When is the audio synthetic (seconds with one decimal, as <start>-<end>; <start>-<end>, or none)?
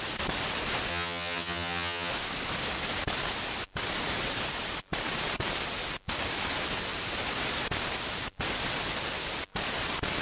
0.9-2.1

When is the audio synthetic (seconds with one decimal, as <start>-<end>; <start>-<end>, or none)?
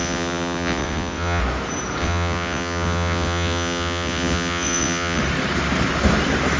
0.0-1.4; 2.0-5.2